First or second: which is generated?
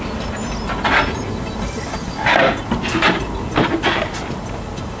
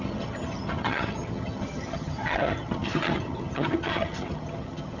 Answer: second